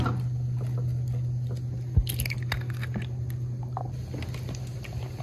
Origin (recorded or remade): recorded